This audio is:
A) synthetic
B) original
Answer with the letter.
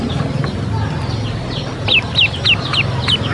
B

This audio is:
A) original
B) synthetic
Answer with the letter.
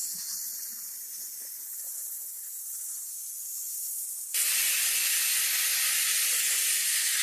A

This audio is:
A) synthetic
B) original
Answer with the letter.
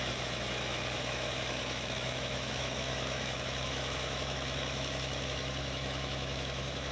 A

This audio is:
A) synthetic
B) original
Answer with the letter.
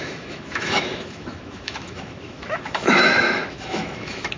A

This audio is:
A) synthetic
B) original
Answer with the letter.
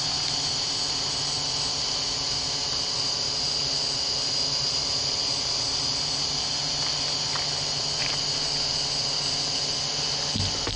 B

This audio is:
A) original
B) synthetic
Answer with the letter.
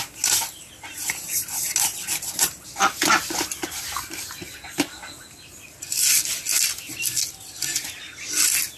A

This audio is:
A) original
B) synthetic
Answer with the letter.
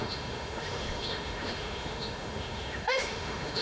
B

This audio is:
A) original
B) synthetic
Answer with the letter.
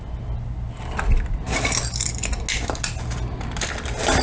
A